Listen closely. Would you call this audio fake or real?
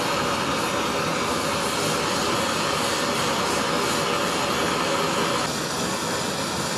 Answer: real